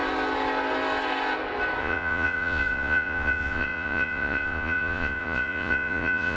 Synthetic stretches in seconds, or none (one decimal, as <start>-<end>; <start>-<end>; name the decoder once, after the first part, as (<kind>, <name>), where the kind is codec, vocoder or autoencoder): 1.8-6.4 (vocoder, Vocos)